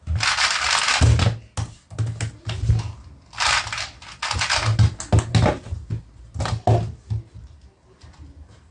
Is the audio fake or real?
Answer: real